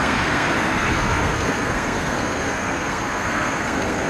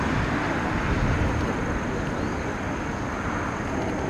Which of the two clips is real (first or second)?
second